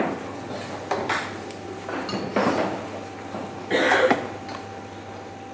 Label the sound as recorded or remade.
recorded